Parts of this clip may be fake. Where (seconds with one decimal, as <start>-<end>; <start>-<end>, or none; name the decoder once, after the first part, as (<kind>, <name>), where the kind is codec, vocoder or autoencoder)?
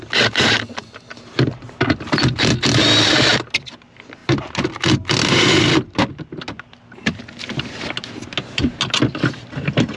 4.2-4.8 (vocoder, BigVGAN v2)